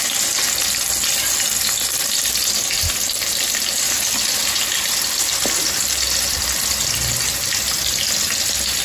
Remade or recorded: recorded